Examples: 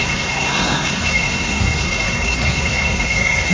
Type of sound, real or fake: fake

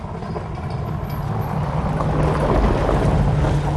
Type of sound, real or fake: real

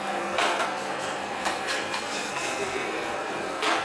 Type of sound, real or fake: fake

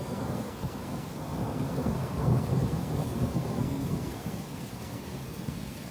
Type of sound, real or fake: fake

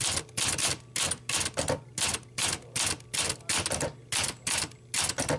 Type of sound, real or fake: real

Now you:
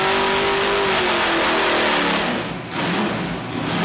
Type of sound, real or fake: real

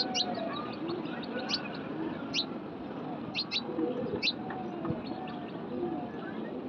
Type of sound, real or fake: real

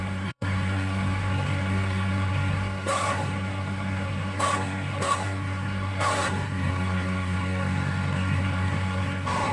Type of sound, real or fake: fake